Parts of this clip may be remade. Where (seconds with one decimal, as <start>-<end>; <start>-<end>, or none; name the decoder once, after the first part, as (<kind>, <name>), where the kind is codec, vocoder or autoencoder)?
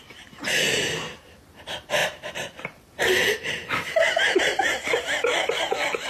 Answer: 2.0-6.1 (vocoder, BigVGAN v2)